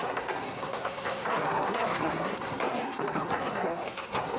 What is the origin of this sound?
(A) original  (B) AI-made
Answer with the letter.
B